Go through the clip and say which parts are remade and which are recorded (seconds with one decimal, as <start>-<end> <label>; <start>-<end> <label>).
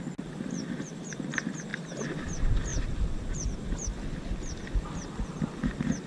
0.0-6.1 recorded